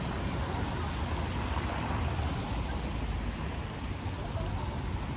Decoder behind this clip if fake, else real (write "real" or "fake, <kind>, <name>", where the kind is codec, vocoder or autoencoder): real